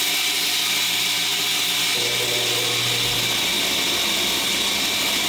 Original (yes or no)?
yes